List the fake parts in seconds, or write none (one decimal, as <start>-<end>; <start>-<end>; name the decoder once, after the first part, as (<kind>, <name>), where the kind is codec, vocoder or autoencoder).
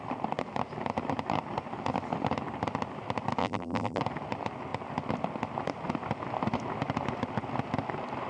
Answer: 3.4-4.0 (vocoder, BigVGAN v2)